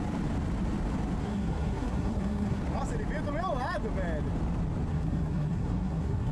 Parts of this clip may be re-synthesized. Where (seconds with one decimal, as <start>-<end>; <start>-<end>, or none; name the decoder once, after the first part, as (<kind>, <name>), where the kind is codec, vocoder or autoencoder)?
1.2-2.6 (codec, SNAC); 4.9-6.3